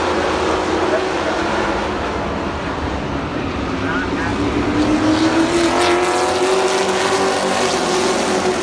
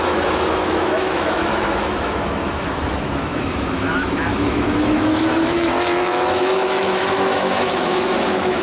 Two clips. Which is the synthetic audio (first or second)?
second